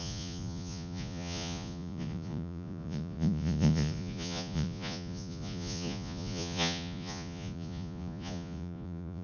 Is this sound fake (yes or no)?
yes